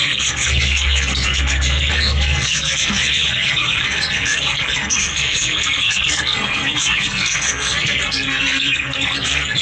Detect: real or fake fake